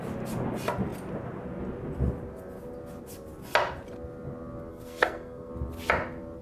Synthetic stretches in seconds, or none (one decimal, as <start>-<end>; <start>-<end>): 4.7-5.5